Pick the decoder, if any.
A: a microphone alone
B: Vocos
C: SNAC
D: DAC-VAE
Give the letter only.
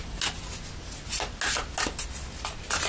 A